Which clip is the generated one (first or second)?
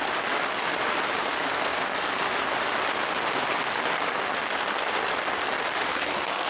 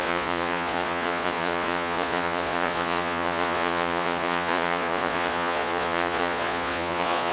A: second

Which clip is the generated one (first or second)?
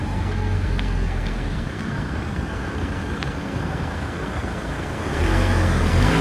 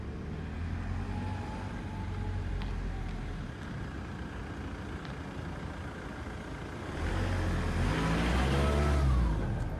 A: first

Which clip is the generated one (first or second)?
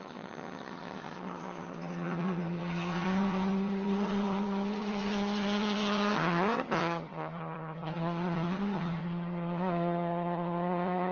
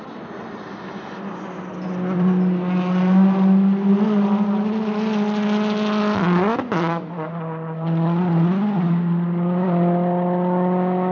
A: first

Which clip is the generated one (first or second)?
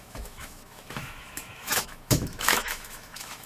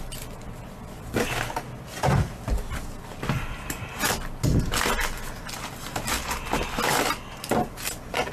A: first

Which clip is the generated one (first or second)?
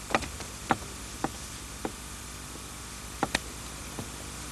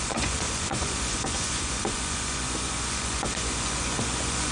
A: second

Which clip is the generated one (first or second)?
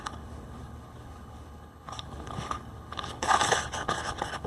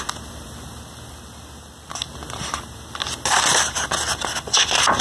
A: first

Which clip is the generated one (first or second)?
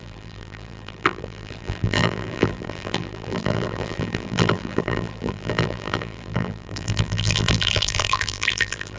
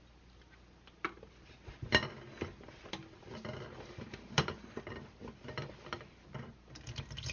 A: first